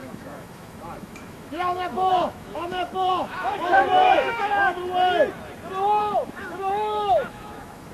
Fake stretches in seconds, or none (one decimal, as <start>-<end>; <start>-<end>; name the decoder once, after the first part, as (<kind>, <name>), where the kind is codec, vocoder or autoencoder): 0.0-4.8 (autoencoder, DAC-VAE); 6.0-7.9